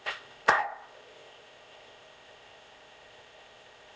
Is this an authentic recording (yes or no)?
no